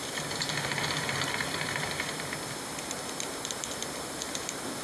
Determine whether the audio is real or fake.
real